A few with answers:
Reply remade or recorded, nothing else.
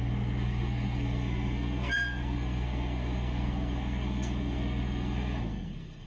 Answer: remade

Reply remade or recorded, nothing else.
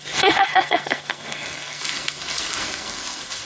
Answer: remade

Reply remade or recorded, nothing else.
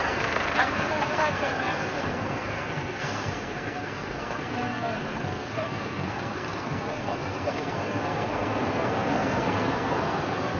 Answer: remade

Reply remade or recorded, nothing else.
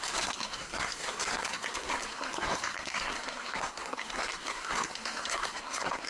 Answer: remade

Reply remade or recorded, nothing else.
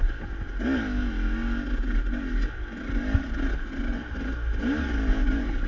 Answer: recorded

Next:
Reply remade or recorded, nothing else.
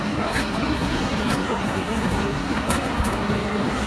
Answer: remade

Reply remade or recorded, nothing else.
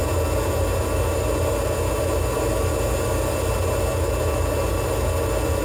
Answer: recorded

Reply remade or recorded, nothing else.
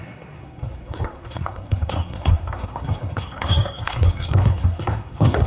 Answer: remade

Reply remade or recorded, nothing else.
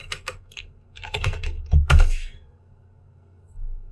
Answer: remade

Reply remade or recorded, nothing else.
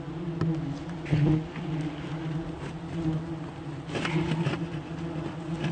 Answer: recorded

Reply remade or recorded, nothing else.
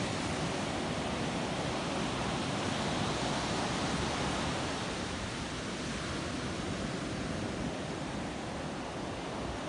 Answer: recorded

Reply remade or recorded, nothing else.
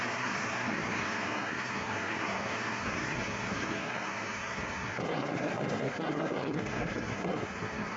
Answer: remade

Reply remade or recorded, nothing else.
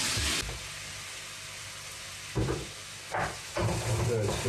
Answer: recorded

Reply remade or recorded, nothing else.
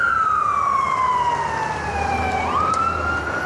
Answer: recorded